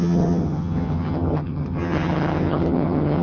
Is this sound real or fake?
fake